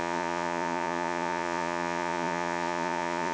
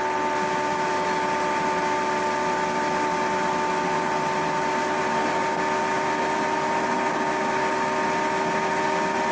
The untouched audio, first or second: second